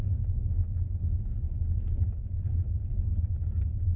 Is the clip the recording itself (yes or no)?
yes